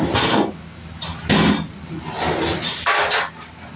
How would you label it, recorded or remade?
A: recorded